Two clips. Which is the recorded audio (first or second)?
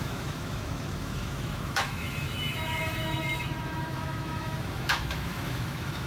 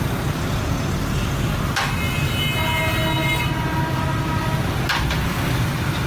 second